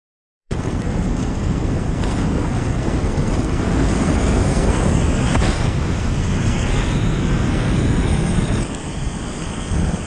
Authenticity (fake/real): fake